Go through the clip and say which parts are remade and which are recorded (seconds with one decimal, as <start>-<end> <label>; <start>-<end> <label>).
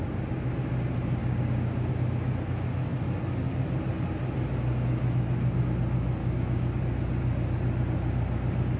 0.0-1.2 recorded; 1.2-1.9 remade; 1.9-6.2 recorded; 6.2-6.8 remade; 6.8-8.8 recorded